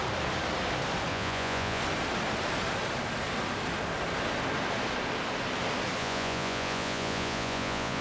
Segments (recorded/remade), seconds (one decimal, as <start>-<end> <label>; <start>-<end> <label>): 0.0-1.1 recorded; 1.1-1.8 remade; 1.8-6.0 recorded; 6.0-8.0 remade